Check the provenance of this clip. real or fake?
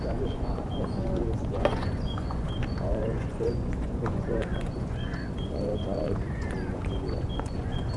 fake